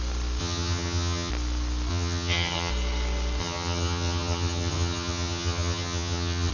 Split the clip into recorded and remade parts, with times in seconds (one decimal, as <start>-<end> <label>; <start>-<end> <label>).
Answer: 0.0-0.4 recorded; 0.4-1.3 remade; 1.3-1.9 recorded; 1.9-2.7 remade; 2.7-3.4 recorded; 3.4-6.5 remade